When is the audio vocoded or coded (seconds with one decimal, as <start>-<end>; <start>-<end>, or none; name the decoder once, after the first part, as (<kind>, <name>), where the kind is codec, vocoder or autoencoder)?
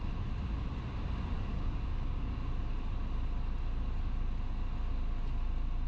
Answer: 1.5-2.4 (codec, DAC)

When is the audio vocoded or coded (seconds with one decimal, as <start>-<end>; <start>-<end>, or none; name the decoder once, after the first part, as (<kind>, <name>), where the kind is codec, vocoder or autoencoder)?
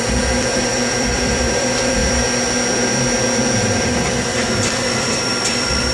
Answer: 0.0-2.0 (vocoder, BigVGAN v2); 3.6-5.9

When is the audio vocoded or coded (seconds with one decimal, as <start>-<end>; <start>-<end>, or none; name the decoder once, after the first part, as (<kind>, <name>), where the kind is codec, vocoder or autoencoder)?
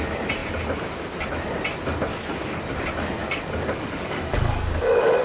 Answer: 2.1-2.6 (codec, DAC); 3.2-5.2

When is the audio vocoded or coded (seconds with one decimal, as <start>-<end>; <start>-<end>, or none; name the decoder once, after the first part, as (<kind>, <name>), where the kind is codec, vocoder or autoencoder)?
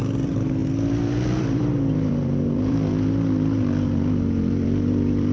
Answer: 0.0-0.6 (vocoder, BigVGAN v2); 1.3-5.3